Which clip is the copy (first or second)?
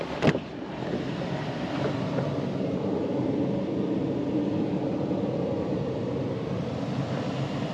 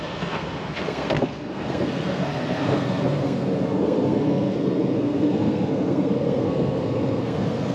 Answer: second